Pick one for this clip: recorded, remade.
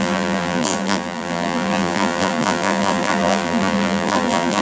remade